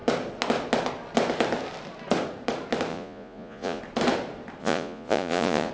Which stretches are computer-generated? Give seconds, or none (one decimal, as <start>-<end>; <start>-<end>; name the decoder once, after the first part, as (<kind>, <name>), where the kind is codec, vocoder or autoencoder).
2.9-3.8 (vocoder, Vocos); 4.6-5.7